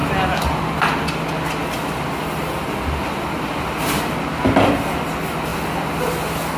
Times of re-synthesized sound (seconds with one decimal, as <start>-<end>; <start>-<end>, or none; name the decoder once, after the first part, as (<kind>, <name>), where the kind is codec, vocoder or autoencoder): none